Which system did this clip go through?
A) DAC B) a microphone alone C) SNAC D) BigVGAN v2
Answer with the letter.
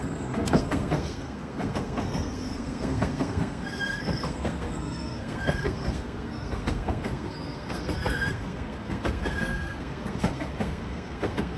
C